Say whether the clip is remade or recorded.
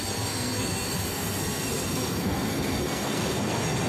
remade